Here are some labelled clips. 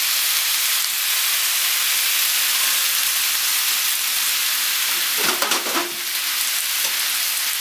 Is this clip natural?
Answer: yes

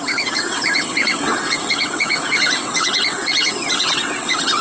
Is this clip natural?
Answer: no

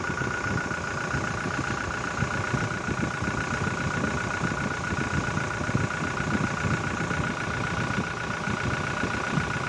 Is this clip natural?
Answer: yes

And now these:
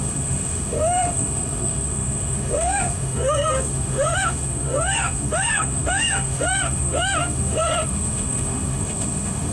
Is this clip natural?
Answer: no